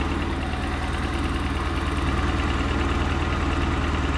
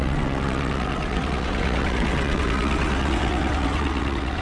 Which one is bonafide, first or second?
first